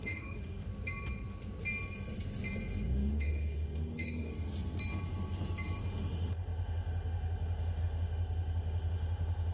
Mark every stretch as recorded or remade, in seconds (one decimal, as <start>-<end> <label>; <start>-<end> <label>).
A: 0.0-0.7 remade; 0.7-2.9 recorded; 2.9-4.3 remade; 4.3-5.8 recorded; 5.8-9.5 remade